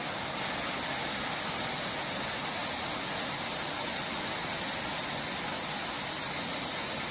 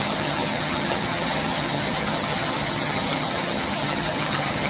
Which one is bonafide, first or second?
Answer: first